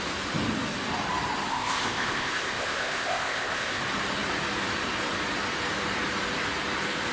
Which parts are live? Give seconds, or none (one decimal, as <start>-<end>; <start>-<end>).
0.0-1.5; 3.8-7.1